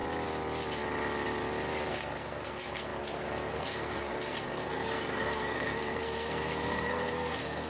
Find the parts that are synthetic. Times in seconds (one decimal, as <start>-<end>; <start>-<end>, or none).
1.9-7.7